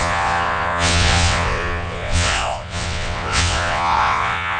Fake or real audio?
fake